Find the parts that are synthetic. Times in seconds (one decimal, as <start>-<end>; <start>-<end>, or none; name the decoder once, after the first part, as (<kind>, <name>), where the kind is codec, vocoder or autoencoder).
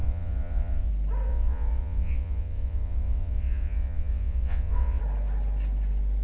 0.0-0.9 (vocoder, WaveNeXt); 1.3-5.0